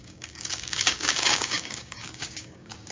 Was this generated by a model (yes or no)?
yes